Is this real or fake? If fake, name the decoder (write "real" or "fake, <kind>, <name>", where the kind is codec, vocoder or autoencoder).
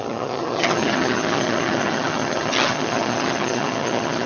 fake, vocoder, HiFi-GAN